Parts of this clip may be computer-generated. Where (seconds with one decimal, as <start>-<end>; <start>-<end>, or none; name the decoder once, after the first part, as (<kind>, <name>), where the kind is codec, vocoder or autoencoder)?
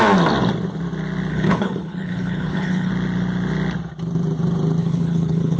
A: 1.3-2.9 (codec, HILCodec); 4.8-5.6